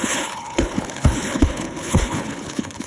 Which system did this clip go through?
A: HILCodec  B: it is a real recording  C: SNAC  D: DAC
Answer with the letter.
A